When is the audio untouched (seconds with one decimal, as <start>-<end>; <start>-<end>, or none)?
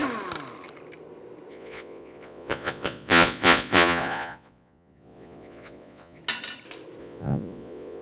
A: 0.0-1.5; 6.2-7.0